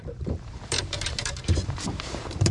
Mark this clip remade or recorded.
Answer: remade